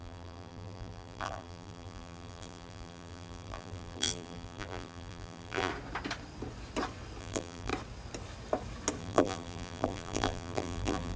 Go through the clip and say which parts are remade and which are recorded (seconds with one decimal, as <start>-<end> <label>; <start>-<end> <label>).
0.0-5.7 remade; 5.7-7.2 recorded; 7.2-7.7 remade; 7.7-9.0 recorded; 9.0-11.2 remade